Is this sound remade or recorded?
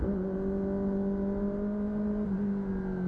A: recorded